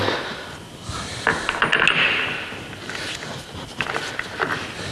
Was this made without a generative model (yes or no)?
yes